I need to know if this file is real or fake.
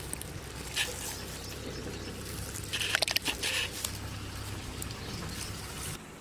real